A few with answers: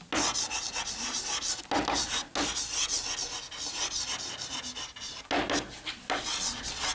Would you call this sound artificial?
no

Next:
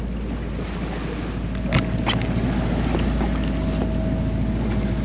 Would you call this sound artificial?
no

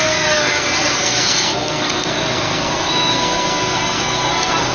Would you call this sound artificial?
yes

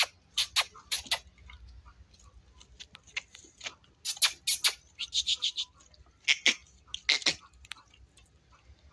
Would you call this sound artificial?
no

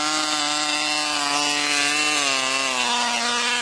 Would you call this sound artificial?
no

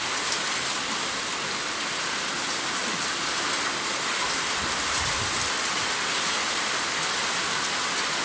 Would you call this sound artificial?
no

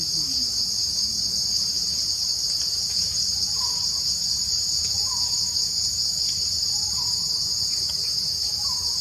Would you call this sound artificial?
yes